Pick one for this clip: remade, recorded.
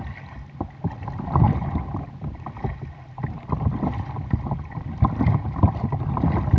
recorded